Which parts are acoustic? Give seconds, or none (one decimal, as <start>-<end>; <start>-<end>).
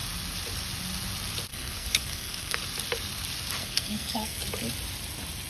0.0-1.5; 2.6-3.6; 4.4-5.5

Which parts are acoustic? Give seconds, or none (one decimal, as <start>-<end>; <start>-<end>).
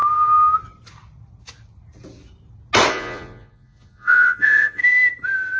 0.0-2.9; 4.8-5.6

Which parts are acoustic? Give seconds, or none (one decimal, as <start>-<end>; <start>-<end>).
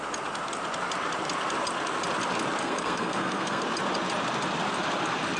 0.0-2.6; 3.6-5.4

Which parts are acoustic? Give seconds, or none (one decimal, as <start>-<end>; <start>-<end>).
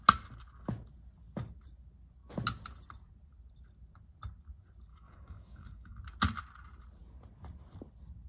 0.0-4.9; 6.0-8.3